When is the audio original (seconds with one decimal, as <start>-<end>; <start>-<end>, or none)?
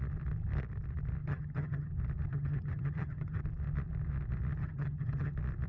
0.0-1.2; 1.9-2.3; 3.4-4.6; 5.3-5.7